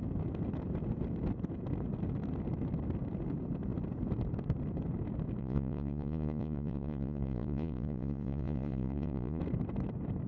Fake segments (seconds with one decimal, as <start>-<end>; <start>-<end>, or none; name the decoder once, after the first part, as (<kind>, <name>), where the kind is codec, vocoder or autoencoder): 5.4-9.4 (vocoder, Vocos)